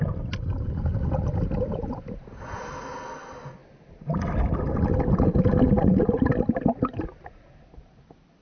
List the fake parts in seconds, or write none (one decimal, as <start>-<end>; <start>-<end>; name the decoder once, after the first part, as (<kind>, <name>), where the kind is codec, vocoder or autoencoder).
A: none